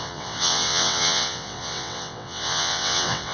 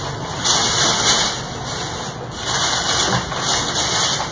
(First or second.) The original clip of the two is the second